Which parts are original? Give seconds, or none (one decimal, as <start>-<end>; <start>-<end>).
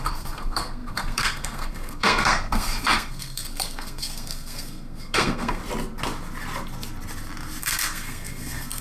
5.6-7.6